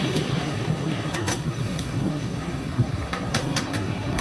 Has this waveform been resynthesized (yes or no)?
yes